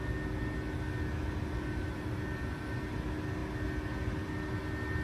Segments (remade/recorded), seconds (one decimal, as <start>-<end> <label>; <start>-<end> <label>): 0.0-5.0 recorded